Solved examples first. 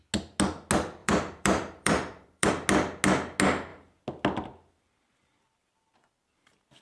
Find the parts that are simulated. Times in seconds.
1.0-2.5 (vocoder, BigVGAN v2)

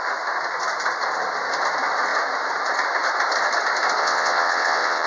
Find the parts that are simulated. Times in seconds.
4.0-5.1 (vocoder, WaveNeXt)

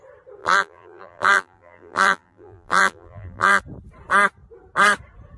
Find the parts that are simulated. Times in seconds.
0.4-3.6 (vocoder, BigVGAN v2)